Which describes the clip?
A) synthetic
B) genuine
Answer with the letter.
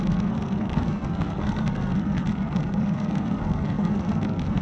A